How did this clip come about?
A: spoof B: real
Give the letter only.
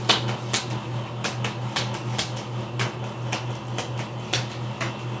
B